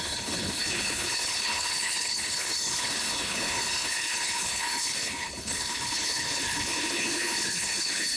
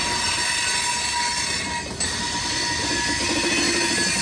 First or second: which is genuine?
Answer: second